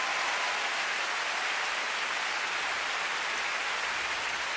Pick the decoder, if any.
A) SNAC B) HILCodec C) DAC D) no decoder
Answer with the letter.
D